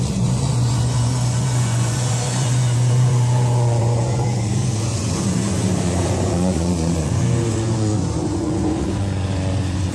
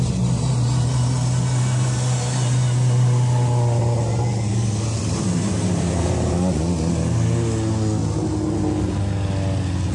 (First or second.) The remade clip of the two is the first